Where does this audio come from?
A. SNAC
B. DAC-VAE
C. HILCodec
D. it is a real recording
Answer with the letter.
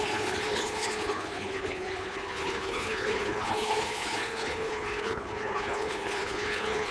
C